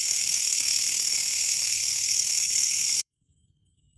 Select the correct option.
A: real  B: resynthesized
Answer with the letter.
B